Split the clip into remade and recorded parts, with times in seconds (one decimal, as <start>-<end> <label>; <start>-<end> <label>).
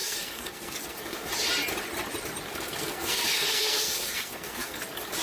0.0-1.3 remade; 1.3-2.5 recorded; 2.5-4.8 remade; 4.8-5.2 recorded